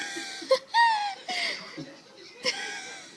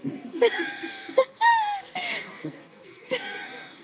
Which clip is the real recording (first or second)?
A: first